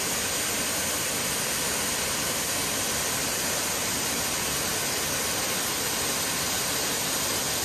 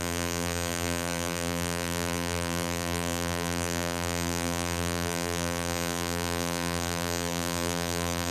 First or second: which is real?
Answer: first